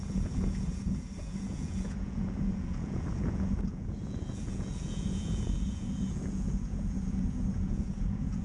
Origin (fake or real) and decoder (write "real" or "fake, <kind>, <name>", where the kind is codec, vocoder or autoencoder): fake, vocoder, Vocos